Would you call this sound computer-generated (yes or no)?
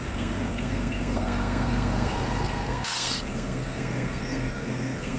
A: yes